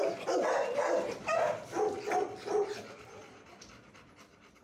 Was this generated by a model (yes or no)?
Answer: no